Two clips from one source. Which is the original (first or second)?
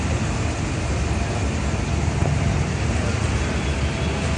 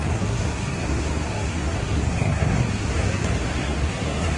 first